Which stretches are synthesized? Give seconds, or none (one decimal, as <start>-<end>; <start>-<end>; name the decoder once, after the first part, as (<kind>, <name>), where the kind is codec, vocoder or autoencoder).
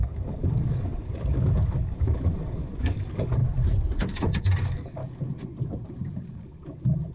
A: 0.0-3.4 (codec, DAC); 4.4-5.0; 6.3-7.1